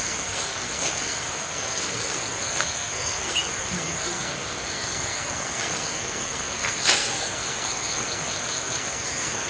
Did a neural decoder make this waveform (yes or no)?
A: yes